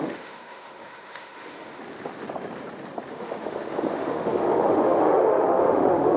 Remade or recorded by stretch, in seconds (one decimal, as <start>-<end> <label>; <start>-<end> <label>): 0.0-1.8 remade; 1.8-3.1 recorded; 3.1-6.2 remade